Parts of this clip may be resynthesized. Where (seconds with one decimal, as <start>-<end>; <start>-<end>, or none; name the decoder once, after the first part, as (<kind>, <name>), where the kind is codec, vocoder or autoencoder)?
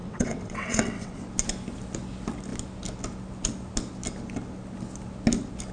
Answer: 0.0-1.2 (vocoder, WaveNeXt)